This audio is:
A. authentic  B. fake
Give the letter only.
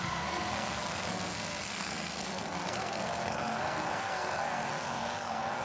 B